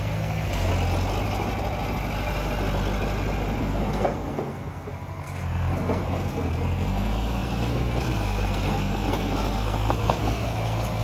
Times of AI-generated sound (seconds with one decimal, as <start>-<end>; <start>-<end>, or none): 0.0-0.7; 3.6-11.0